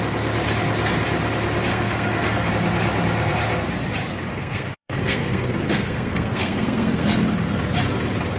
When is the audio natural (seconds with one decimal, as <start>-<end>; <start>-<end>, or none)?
0.0-1.7; 2.5-4.3; 7.2-8.4